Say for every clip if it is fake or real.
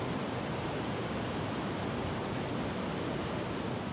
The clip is real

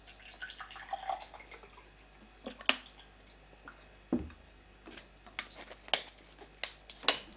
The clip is real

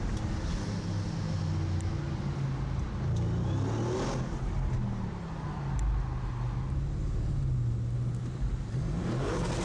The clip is real